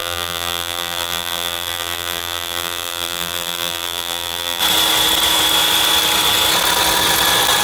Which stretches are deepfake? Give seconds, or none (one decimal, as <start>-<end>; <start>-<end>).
0.0-4.6